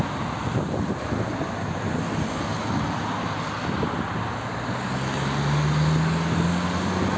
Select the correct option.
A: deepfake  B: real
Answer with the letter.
B